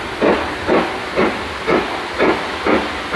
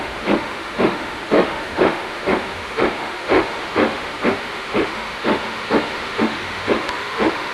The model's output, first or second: second